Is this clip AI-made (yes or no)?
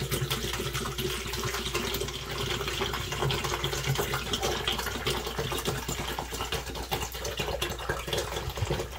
no